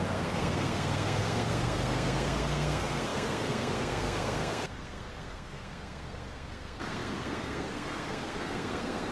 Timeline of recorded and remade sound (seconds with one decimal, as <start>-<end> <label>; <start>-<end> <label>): 0.0-9.1 remade

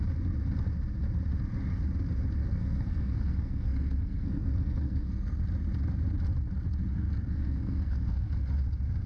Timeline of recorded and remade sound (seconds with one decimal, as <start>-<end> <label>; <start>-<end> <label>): 0.0-2.4 recorded; 2.4-5.4 remade; 5.4-6.9 recorded; 6.9-8.3 remade; 8.3-9.1 recorded

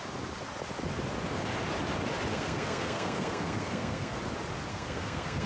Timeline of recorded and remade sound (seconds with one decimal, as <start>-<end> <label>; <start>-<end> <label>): 0.0-2.3 recorded; 2.3-4.2 remade; 4.2-4.7 recorded; 4.7-5.5 remade

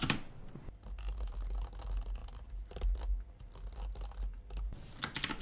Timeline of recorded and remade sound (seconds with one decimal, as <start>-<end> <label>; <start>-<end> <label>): 0.0-5.4 recorded

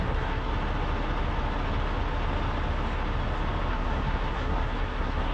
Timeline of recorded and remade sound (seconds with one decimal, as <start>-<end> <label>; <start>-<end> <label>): 0.0-0.5 remade; 0.5-3.7 recorded; 3.7-5.3 remade

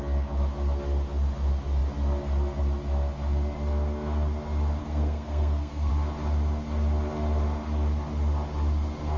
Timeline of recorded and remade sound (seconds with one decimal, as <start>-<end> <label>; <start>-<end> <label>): 0.0-4.8 recorded; 4.8-5.9 remade; 5.9-9.2 recorded

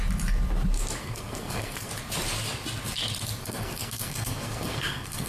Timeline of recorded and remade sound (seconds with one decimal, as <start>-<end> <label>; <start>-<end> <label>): 0.0-1.0 recorded; 1.0-1.9 remade; 1.9-3.4 recorded; 3.4-5.3 remade

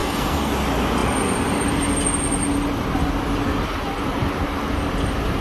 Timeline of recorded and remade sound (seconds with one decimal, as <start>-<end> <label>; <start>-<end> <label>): 0.0-0.5 remade; 0.5-5.4 recorded